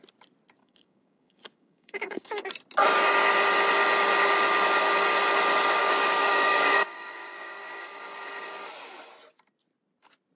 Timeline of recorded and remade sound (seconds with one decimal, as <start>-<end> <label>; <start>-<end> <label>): 0.0-0.6 recorded; 0.6-2.5 remade; 2.5-5.8 recorded; 5.8-8.0 remade; 8.0-10.4 recorded